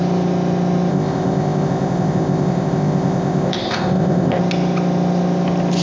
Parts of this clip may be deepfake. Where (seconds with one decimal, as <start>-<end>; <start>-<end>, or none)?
0.9-4.4